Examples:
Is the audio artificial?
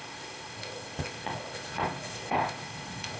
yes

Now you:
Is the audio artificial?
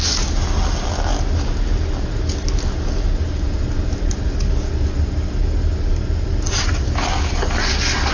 no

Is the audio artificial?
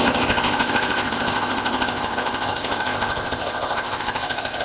yes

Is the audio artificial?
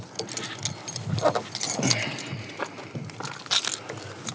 no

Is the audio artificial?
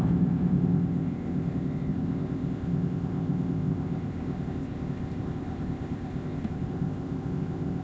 yes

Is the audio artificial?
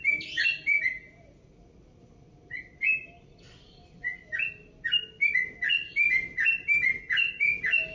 no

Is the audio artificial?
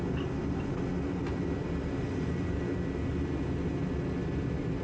no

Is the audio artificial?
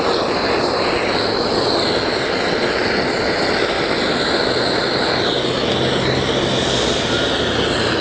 no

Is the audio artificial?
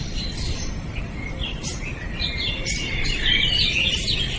no